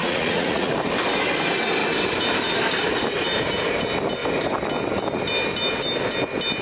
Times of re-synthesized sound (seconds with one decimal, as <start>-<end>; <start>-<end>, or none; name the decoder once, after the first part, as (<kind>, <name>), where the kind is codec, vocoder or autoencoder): 0.0-0.7 (vocoder, Vocos)